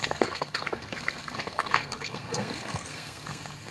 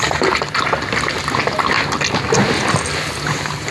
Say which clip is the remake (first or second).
first